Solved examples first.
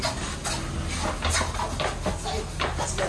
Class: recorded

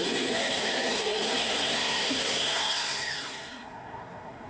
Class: remade